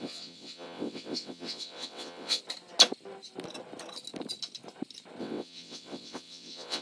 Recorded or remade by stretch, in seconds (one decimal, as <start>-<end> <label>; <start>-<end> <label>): 0.0-2.4 remade; 2.4-5.2 recorded; 5.2-6.8 remade